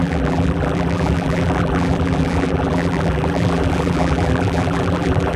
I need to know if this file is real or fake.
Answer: fake